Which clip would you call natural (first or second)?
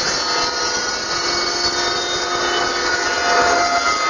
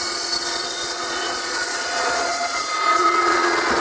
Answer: first